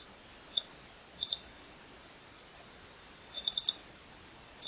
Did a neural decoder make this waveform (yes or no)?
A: no